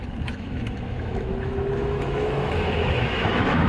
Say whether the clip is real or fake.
fake